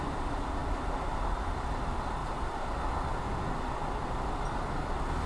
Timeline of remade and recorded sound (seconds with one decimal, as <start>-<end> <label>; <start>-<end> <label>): 0.0-5.3 recorded